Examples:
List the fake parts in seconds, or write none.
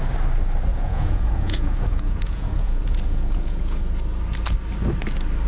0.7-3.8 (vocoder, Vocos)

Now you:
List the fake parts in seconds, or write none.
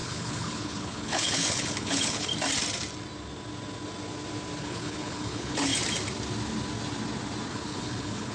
0.0-2.3 (codec, HILCodec); 4.6-5.7; 7.5-8.3